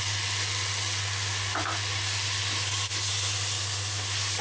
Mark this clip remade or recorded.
recorded